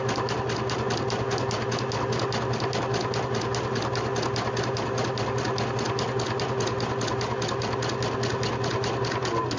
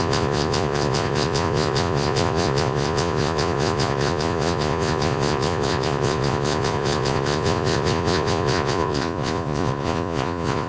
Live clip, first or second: first